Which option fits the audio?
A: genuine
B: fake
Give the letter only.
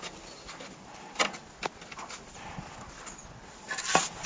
A